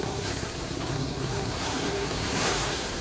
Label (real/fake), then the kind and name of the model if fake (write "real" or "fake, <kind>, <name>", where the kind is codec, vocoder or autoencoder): fake, codec, SNAC